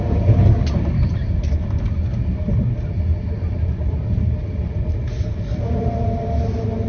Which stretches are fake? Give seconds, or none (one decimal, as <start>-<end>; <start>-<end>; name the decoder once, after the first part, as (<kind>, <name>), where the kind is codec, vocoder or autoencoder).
none